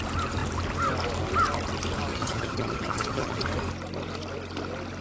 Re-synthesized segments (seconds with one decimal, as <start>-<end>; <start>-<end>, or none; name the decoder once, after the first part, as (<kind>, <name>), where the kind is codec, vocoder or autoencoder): 2.1-3.4 (vocoder, HiFi-GAN)

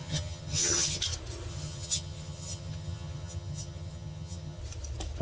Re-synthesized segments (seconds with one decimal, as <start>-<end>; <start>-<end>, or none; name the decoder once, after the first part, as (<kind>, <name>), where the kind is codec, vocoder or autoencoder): 0.0-1.0 (vocoder, HiFi-GAN); 1.5-4.6